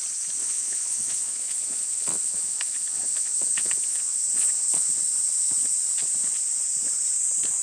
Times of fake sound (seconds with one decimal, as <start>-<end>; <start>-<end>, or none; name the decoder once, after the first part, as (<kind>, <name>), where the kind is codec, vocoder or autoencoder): 0.4-5.0 (vocoder, Vocos)